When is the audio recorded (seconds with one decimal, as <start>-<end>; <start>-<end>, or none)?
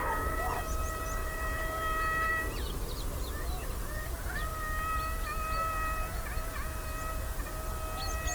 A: 0.6-1.2; 2.3-8.3